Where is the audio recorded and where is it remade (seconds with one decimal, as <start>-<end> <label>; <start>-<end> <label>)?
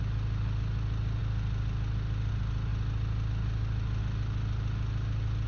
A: 0.0-5.5 recorded